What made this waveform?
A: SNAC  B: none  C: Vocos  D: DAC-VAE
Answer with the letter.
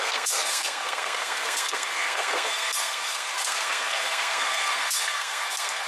A